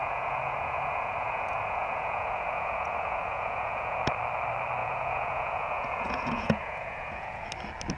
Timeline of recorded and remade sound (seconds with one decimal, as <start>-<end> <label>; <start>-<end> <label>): 0.0-4.0 remade; 4.0-4.8 recorded; 4.8-7.5 remade; 7.5-8.0 recorded